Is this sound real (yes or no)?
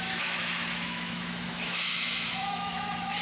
no